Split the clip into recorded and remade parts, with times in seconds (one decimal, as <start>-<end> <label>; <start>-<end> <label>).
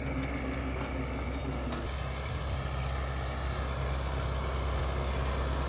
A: 0.0-5.7 recorded